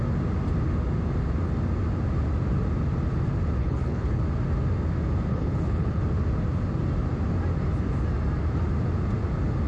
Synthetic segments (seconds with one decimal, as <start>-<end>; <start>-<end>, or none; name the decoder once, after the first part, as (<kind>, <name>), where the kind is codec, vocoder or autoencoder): 3.6-4.2 (codec, HILCodec); 5.3-6.0